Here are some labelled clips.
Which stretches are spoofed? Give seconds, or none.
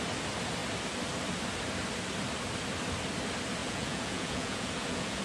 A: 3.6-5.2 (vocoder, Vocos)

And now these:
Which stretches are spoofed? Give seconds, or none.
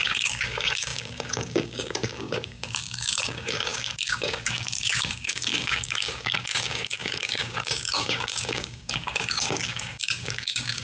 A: 0.0-10.8 (codec, DAC)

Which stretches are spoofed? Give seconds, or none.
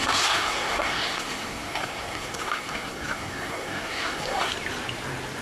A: 0.0-4.5 (codec, SNAC)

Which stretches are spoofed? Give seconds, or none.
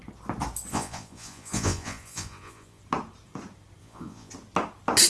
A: 0.7-2.8 (vocoder, Vocos); 3.8-4.3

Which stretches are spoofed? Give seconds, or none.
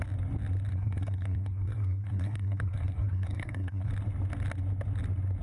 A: 0.7-3.9 (codec, SNAC)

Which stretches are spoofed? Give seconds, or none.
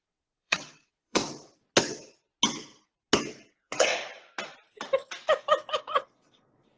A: 0.0-1.2 (vocoder, WaveNeXt); 3.5-3.9; 5.8-6.8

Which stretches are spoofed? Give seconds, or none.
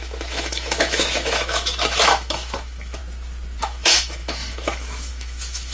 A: 0.0-3.0 (autoencoder, DAC-VAE); 3.6-5.7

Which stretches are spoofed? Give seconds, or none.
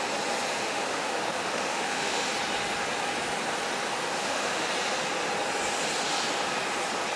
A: 0.6-2.3 (autoencoder, DAC-VAE); 4.2-4.7